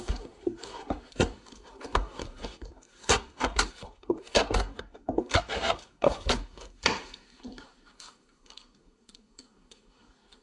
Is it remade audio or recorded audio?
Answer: remade